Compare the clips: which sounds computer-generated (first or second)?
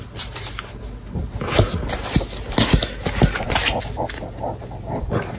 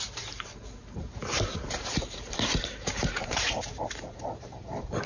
second